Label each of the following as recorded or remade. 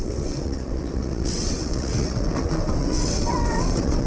remade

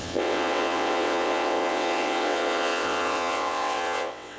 remade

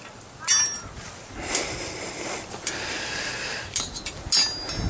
recorded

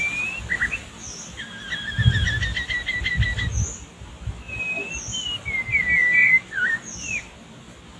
recorded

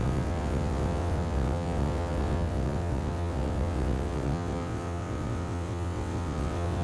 remade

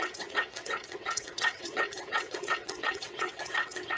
remade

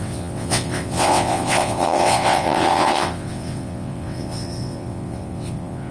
remade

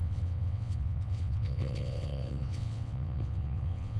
remade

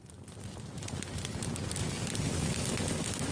recorded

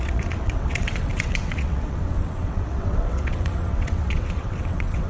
remade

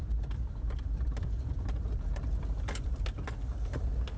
recorded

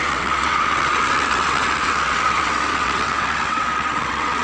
remade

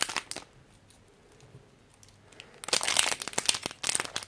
recorded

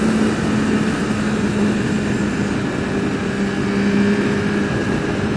recorded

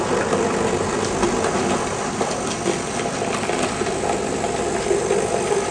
recorded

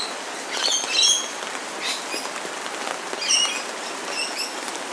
recorded